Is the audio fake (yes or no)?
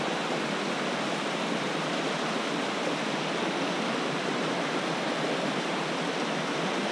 yes